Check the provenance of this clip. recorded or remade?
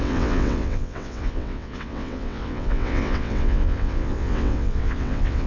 remade